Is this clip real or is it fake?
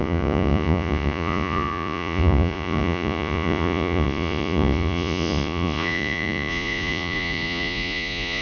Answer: fake